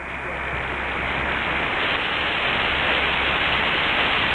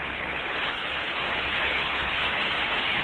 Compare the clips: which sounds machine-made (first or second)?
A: second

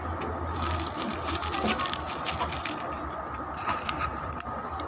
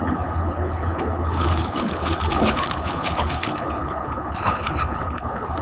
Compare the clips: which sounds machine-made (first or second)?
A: second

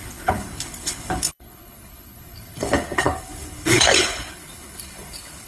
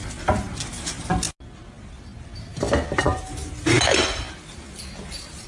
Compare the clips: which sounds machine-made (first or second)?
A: first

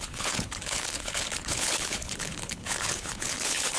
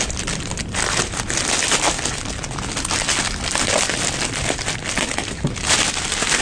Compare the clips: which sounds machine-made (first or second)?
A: first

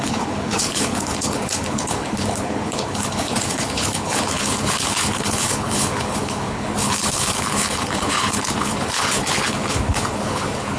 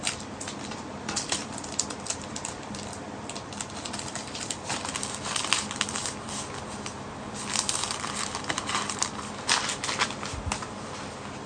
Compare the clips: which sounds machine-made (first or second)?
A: first